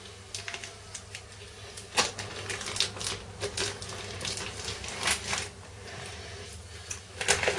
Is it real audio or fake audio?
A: real